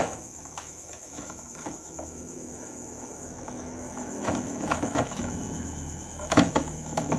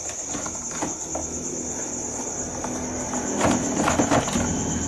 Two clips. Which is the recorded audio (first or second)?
second